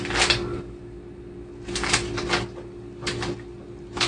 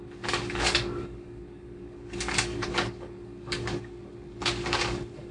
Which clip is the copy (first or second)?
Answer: second